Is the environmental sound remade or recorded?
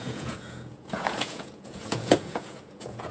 remade